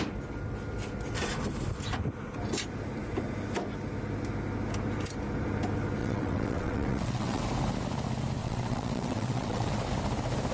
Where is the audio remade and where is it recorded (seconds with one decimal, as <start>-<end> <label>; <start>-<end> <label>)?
0.0-6.0 recorded; 6.0-7.4 remade; 7.4-8.4 recorded; 8.4-9.7 remade; 9.7-10.5 recorded